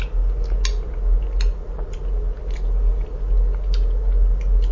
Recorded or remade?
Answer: recorded